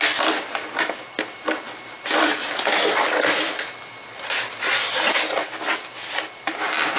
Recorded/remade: recorded